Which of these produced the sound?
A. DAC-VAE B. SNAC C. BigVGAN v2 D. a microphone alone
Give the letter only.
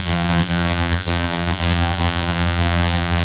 C